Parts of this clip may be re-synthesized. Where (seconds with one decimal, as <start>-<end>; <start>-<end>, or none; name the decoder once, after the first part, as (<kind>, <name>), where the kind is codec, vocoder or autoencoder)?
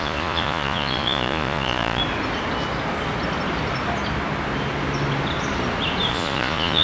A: 0.0-2.0 (vocoder, Vocos); 6.1-6.8